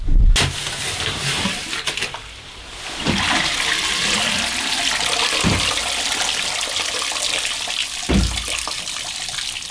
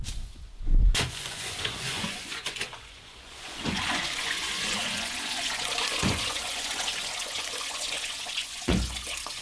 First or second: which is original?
first